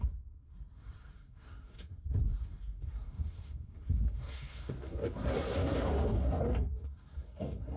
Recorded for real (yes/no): no